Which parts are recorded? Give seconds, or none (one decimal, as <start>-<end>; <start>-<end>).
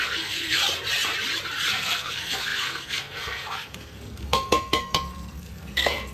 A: 0.6-1.7